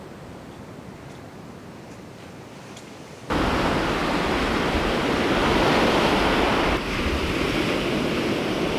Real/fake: real